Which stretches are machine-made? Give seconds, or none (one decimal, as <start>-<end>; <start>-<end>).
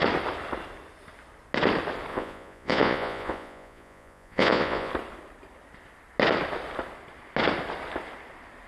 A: 2.1-4.9